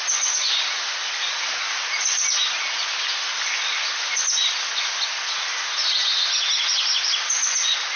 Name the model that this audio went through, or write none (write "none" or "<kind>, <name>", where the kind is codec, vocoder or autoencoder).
none